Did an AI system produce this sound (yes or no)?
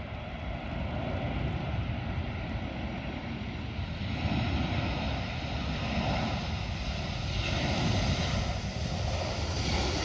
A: no